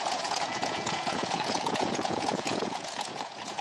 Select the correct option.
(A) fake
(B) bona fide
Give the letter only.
A